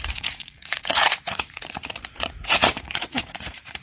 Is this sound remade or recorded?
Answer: remade